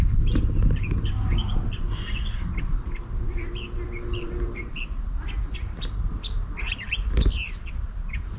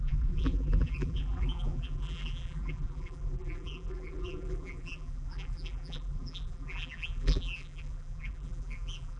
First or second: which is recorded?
first